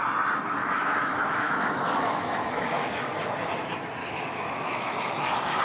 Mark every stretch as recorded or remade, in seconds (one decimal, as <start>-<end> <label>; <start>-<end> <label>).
0.0-0.6 recorded; 0.6-3.1 remade; 3.1-4.0 recorded; 4.0-5.6 remade